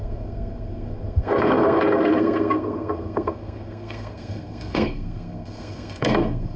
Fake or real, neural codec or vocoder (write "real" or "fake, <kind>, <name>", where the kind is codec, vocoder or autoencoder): fake, codec, SNAC